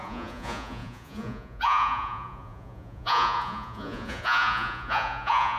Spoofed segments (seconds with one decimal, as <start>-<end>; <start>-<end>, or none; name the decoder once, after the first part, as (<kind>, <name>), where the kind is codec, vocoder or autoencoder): 0.0-5.6 (vocoder, Vocos)